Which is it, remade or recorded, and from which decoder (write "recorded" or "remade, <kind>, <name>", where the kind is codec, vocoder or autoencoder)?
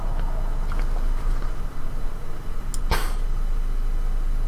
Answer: recorded